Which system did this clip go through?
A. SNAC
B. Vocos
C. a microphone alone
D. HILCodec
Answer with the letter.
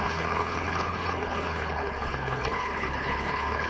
D